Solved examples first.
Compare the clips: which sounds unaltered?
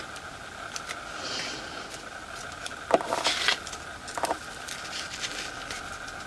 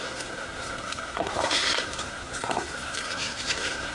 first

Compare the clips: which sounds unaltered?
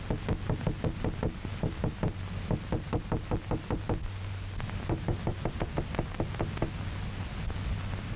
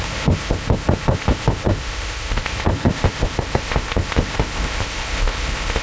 first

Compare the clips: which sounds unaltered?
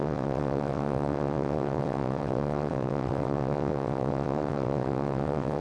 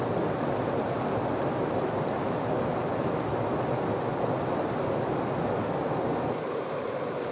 second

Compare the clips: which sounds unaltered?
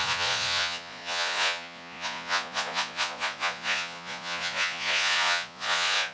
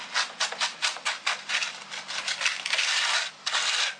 second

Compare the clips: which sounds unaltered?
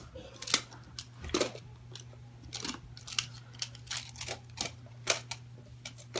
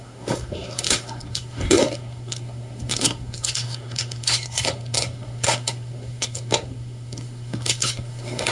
first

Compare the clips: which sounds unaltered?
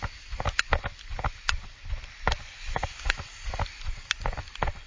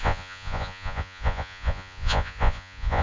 first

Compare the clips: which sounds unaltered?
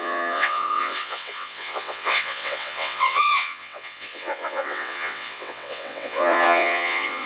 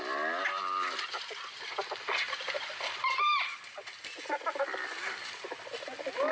second